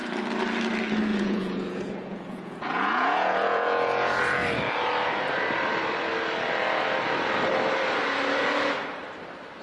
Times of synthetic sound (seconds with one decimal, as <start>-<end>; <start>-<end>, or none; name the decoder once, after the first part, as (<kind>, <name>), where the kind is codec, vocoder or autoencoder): 1.1-4.2 (vocoder, Vocos)